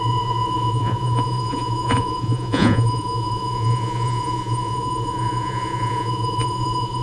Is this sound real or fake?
fake